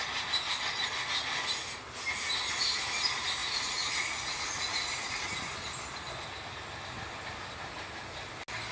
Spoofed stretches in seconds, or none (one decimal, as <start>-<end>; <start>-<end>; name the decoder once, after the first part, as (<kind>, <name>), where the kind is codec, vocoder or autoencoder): 3.4-5.2 (vocoder, Vocos)

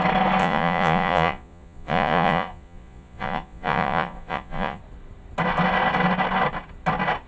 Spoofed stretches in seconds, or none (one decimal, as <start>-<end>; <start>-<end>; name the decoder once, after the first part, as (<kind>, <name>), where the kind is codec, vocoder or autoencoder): 0.4-4.8 (vocoder, Vocos)

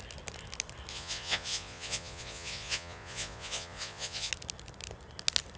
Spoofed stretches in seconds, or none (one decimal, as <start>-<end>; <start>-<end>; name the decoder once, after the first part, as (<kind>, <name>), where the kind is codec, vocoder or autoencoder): 0.9-4.3 (vocoder, Vocos)

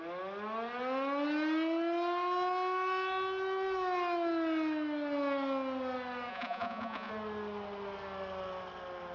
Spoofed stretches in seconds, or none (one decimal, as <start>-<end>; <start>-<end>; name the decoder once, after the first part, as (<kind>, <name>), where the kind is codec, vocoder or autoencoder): 6.3-7.1 (vocoder, Vocos)

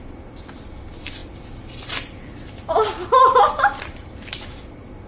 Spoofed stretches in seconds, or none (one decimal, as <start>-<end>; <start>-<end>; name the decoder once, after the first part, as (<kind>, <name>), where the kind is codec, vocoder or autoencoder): none

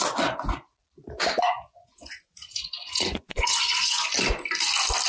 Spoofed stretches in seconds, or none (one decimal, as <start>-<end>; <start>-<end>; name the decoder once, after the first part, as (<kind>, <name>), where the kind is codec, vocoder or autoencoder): 1.2-4.1 (vocoder, Vocos)

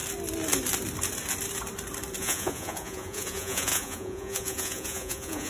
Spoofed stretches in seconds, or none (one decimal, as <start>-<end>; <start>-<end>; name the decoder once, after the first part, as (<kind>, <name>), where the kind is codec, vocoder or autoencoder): 2.2-5.5 (vocoder, Vocos)

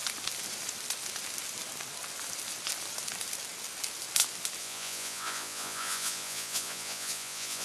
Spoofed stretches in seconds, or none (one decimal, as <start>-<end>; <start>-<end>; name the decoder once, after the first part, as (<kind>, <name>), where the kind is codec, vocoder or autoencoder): 4.6-7.6 (vocoder, Vocos)